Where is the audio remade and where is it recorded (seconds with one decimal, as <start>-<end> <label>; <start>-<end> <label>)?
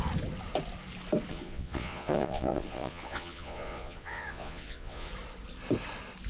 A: 0.0-1.3 recorded; 1.3-5.1 remade; 5.1-6.3 recorded